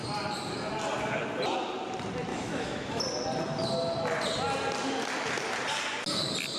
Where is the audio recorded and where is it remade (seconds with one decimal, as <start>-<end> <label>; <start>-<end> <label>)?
0.0-2.3 recorded; 2.3-3.0 remade; 3.0-6.6 recorded